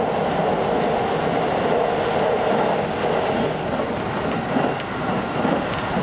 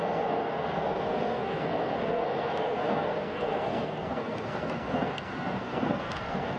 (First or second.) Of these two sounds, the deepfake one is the second